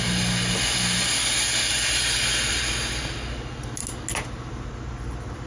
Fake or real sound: real